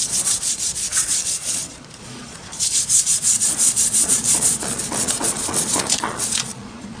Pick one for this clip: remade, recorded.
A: remade